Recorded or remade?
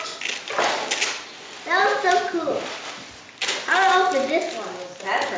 recorded